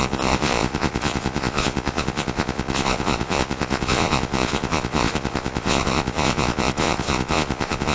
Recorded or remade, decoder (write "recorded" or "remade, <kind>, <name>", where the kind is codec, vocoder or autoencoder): remade, vocoder, Vocos